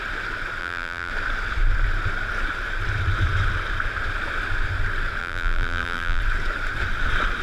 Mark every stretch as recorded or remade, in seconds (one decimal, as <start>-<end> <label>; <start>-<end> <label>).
0.0-0.6 recorded; 0.6-1.1 remade; 1.1-5.2 recorded; 5.2-6.2 remade; 6.2-7.4 recorded